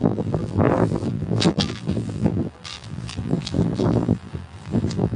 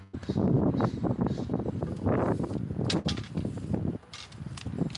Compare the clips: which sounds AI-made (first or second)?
first